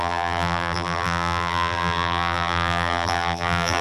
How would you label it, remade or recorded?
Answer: remade